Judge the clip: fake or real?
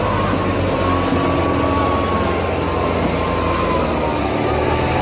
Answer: real